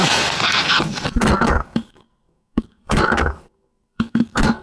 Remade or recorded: remade